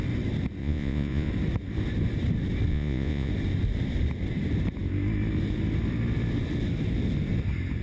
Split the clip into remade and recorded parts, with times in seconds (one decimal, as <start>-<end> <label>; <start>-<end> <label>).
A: 0.0-0.6 recorded; 0.6-1.3 remade; 1.3-2.7 recorded; 2.7-3.3 remade; 3.3-7.8 recorded